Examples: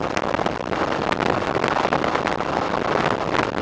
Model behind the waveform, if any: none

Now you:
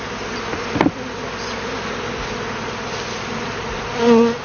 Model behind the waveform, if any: none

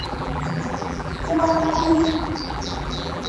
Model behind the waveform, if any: vocoder, BigVGAN v2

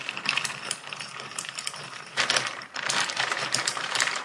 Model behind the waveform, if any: vocoder, BigVGAN v2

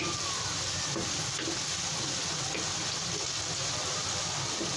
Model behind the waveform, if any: none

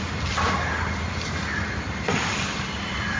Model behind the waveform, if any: none